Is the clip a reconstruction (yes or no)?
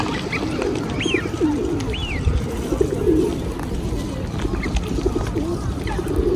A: no